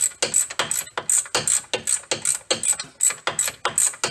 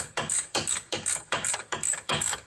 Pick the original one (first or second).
first